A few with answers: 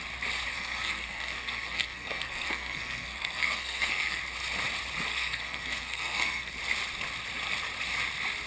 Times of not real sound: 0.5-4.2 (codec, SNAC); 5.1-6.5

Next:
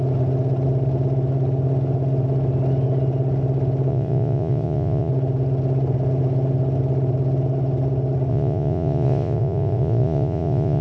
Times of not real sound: 3.9-5.1 (vocoder, Vocos); 8.3-10.8

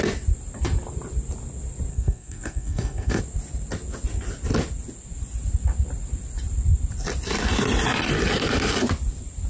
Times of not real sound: 1.9-3.2 (codec, SNAC)

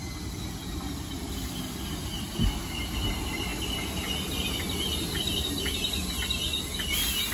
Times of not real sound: none

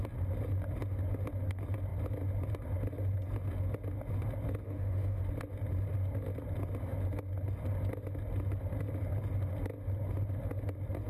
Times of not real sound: 4.6-5.2 (autoencoder, DAC-VAE)

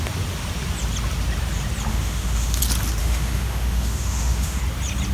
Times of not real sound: 1.9-2.6 (autoencoder, DAC-VAE); 3.0-4.6